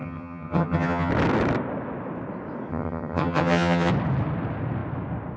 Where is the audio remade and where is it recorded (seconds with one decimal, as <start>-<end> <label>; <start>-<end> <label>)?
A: 0.0-1.1 remade; 1.1-2.7 recorded; 2.7-3.9 remade; 3.9-5.4 recorded